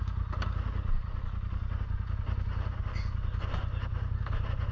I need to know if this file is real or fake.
real